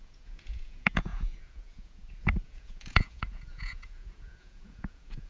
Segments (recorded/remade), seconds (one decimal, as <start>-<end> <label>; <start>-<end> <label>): 0.0-5.3 remade